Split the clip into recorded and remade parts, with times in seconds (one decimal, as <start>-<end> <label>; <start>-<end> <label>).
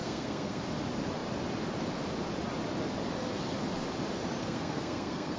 0.0-0.6 remade; 0.6-4.4 recorded; 4.4-5.4 remade